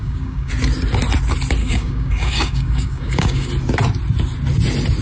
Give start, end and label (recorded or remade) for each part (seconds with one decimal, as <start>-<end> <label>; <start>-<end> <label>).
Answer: 0.0-0.5 remade; 0.5-1.6 recorded; 1.6-3.5 remade; 3.5-5.0 recorded